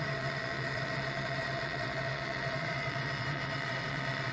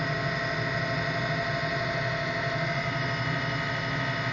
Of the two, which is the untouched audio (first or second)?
second